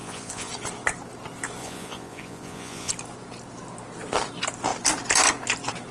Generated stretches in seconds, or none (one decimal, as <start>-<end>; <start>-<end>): 0.0-0.5; 1.6-2.9